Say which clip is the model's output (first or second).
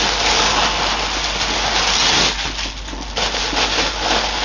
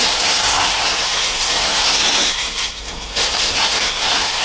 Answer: second